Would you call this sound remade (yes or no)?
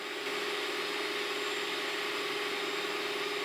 no